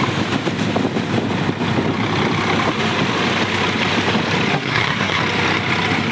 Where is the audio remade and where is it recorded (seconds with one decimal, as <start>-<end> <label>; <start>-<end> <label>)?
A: 0.0-4.5 recorded; 4.5-5.2 remade; 5.2-6.1 recorded